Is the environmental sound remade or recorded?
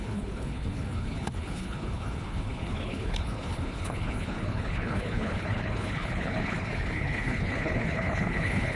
remade